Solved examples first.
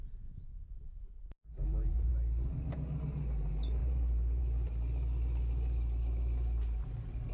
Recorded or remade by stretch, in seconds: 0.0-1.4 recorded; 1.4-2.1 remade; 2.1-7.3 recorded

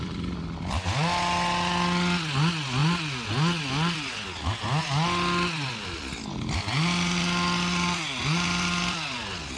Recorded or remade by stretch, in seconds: 0.0-9.6 recorded

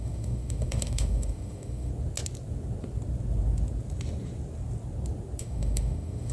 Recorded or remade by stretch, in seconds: 0.0-1.9 remade; 1.9-5.4 recorded; 5.4-6.3 remade

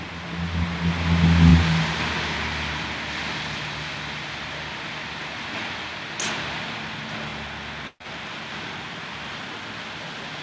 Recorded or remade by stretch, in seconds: 0.0-10.4 recorded

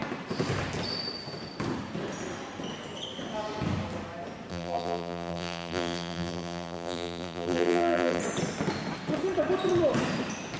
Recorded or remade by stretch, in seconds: 0.0-4.5 recorded; 4.5-8.2 remade; 8.2-10.6 recorded

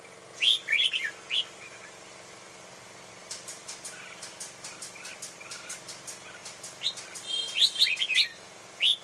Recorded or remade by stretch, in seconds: 0.0-9.0 recorded